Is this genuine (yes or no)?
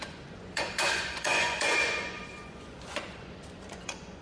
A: no